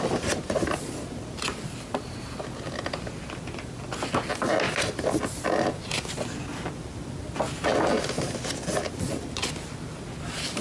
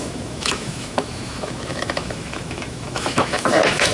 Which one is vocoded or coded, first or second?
second